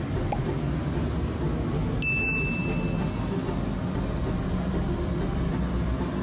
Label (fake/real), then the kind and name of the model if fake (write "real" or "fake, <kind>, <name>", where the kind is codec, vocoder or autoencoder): real